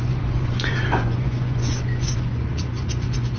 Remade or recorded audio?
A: remade